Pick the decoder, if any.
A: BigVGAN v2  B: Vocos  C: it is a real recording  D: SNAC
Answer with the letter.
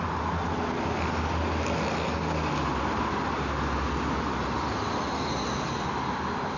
C